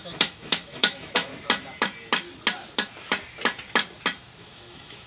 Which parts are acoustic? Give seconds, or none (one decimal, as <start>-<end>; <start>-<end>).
1.3-4.4

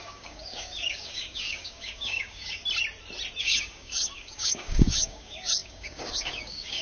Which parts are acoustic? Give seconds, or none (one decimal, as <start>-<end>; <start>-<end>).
2.6-3.4

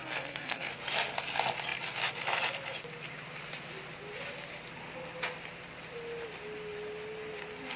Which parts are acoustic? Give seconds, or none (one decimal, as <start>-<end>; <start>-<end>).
0.7-7.8

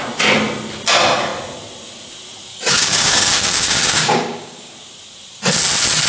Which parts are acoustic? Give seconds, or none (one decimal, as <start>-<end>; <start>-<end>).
0.0-2.5; 4.7-6.1

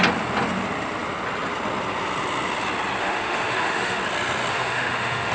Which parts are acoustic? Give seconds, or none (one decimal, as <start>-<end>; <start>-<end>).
0.0-3.0; 4.0-4.5

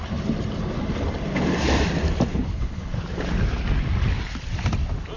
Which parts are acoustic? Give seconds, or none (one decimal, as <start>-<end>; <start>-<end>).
0.0-2.3; 2.9-5.2

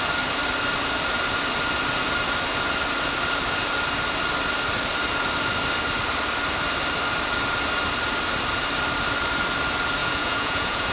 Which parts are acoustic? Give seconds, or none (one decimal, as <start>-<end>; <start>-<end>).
0.0-10.0

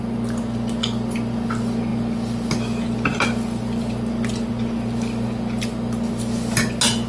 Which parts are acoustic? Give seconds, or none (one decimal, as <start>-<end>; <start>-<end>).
0.0-7.1